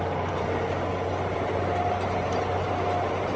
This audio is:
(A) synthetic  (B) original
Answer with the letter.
B